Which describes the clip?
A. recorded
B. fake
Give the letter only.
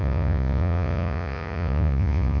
B